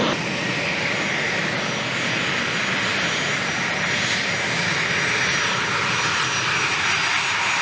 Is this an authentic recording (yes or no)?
yes